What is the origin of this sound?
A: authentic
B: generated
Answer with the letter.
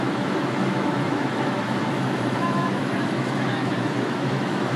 B